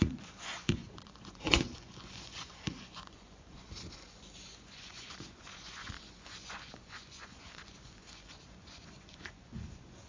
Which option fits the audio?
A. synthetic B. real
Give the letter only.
A